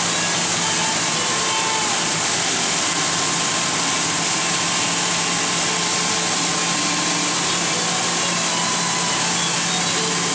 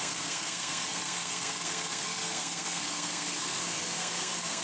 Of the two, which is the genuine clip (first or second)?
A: first